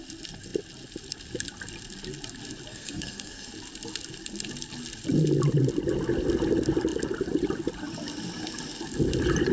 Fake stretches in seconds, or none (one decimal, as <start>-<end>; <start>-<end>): 2.7-3.5